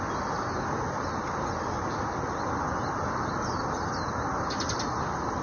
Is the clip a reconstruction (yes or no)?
no